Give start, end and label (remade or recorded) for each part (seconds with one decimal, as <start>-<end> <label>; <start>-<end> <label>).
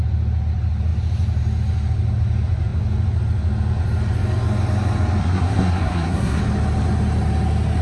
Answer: 0.0-5.2 recorded; 5.2-6.4 remade; 6.4-7.8 recorded